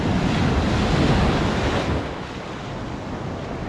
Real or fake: real